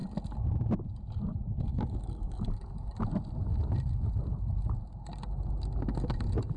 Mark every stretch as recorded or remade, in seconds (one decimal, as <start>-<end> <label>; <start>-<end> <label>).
0.0-1.7 recorded; 1.7-3.0 remade; 3.0-6.6 recorded

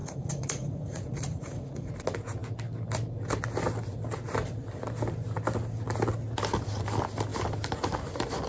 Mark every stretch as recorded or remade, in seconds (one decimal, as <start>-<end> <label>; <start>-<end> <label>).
0.0-1.9 remade; 1.9-8.5 recorded

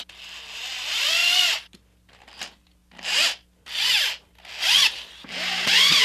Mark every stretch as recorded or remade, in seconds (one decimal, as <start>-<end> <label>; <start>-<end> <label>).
0.0-6.0 recorded

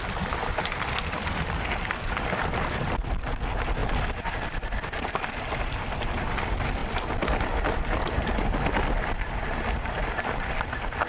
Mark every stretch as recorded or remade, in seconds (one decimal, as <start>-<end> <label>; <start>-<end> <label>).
0.0-3.8 remade; 3.8-5.2 recorded; 5.2-6.8 remade; 6.8-9.4 recorded; 9.4-11.1 remade

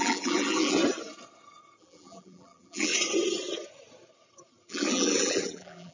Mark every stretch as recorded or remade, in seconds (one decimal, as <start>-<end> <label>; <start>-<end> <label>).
0.0-0.8 remade; 0.8-1.8 recorded; 1.8-2.9 remade; 2.9-4.7 recorded; 4.7-5.9 remade

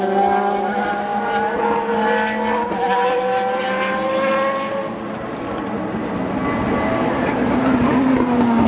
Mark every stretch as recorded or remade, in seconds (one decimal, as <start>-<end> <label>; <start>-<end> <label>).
0.0-8.7 recorded

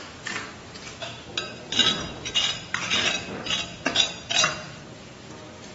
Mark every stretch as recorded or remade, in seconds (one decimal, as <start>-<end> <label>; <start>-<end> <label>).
0.0-5.7 recorded

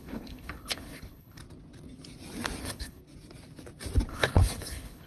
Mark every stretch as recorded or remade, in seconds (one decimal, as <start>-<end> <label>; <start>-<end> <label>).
0.0-1.4 remade; 1.4-2.6 recorded; 2.6-3.0 remade; 3.0-4.1 recorded; 4.1-5.1 remade